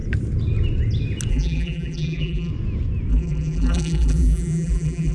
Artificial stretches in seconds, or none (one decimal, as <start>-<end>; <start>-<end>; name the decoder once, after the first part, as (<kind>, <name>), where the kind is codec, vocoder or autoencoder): 1.3-2.5 (vocoder, BigVGAN v2); 3.1-5.1